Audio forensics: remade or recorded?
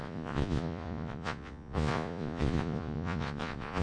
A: remade